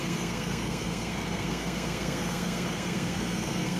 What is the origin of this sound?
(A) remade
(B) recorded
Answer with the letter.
A